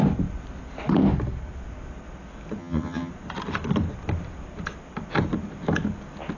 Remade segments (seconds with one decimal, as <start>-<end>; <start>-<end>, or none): 2.6-3.1